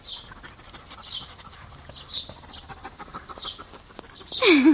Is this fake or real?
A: real